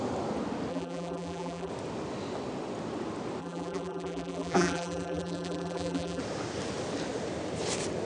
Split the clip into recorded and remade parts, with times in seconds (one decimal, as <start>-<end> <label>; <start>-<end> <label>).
0.0-0.7 recorded; 0.7-1.7 remade; 1.7-3.4 recorded; 3.4-6.2 remade; 6.2-8.1 recorded